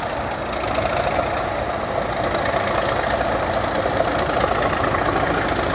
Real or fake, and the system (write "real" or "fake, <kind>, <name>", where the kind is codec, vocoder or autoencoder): real